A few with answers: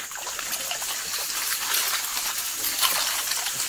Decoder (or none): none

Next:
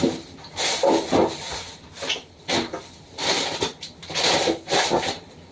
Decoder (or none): none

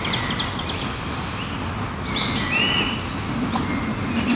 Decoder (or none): none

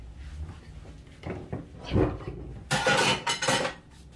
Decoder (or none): none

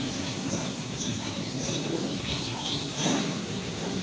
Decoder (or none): codec, SNAC